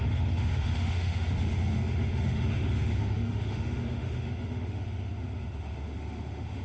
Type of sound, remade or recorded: remade